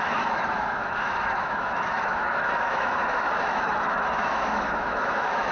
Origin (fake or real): fake